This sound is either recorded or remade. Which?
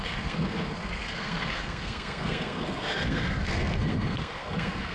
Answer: remade